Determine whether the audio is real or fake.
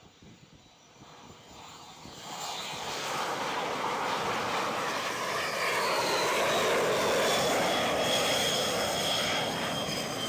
real